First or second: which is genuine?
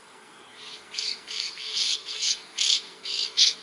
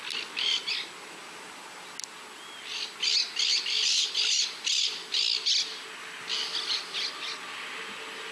second